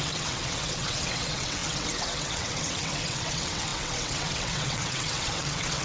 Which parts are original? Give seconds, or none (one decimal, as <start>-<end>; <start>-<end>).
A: none